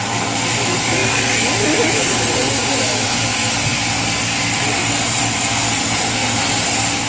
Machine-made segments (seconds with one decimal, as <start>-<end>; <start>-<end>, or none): none